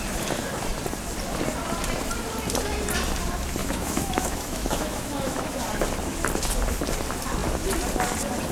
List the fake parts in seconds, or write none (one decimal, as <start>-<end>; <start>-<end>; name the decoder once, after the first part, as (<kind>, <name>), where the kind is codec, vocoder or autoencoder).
3.6-5.6 (autoencoder, DAC-VAE)